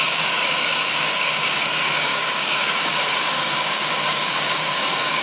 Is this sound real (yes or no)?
no